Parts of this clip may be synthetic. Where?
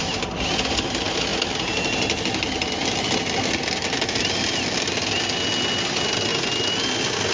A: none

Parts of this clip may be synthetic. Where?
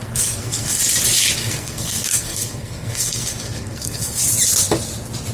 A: 0.0-0.8 (codec, SNAC); 1.4-4.2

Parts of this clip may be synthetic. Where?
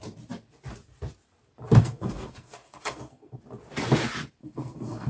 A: 1.8-3.4 (codec, SNAC); 4.4-5.1